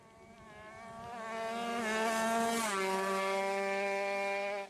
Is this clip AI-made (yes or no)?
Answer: no